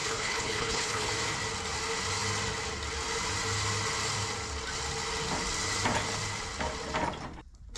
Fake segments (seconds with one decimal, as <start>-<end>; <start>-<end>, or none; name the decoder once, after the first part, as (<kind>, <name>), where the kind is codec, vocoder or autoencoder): 0.0-1.1 (codec, HILCodec)